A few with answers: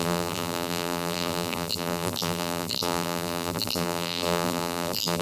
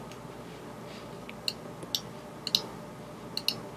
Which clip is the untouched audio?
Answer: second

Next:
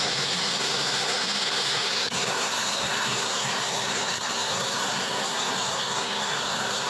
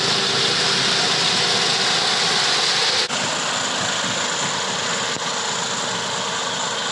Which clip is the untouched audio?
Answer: second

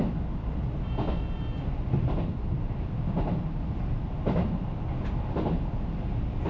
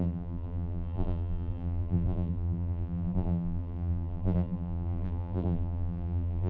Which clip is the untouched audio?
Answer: first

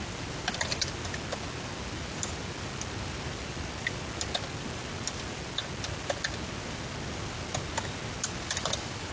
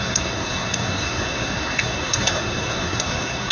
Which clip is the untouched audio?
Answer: first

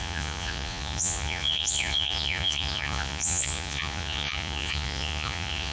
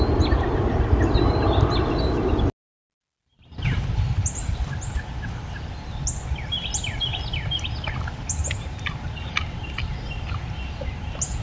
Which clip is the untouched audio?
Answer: second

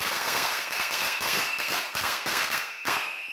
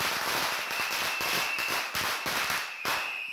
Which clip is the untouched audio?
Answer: second